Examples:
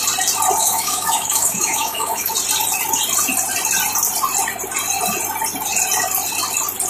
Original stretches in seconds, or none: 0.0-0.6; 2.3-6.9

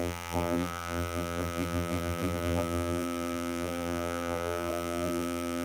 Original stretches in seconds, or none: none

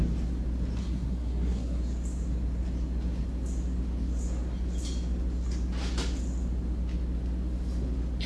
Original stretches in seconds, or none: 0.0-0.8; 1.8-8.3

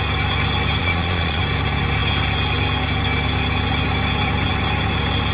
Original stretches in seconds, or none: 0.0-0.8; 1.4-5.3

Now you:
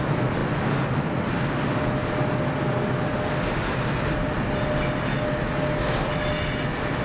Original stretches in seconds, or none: 0.0-7.0

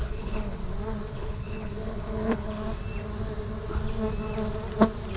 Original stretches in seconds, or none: 0.6-1.1; 2.6-5.2

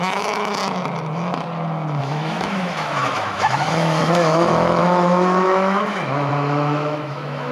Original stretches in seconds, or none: 0.6-2.0

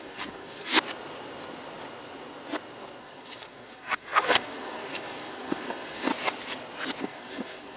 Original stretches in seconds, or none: 0.7-3.0; 6.1-7.0